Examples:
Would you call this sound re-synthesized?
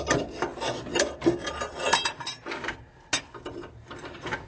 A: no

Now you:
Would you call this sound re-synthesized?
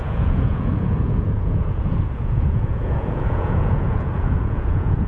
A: yes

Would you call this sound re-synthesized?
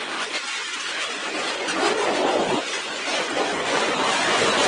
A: yes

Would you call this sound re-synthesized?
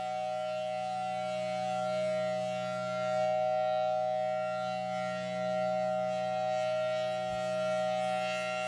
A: no